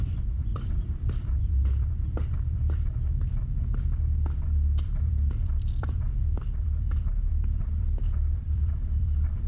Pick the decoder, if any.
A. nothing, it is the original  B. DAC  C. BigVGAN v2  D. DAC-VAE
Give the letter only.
C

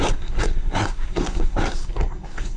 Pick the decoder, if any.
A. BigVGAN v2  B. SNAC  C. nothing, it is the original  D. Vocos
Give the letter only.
B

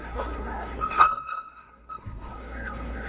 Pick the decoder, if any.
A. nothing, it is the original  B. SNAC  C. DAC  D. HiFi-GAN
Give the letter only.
B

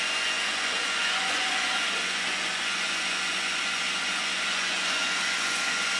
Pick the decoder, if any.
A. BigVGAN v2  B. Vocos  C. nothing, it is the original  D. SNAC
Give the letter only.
B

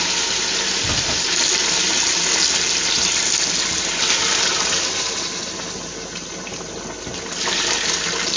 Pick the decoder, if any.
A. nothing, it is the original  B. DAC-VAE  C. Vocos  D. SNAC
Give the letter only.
A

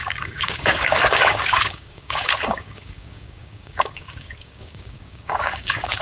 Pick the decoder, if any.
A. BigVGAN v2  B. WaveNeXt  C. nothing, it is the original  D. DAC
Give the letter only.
D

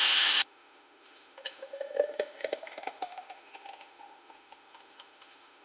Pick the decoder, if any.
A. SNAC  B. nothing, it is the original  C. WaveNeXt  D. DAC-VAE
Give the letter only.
D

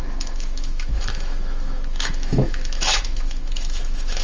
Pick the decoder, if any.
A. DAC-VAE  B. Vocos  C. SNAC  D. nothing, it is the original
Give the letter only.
A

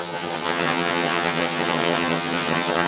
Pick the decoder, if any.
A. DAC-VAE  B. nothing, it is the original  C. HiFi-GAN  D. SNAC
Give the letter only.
C